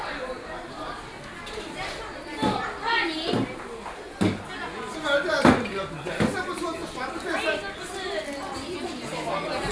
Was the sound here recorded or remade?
recorded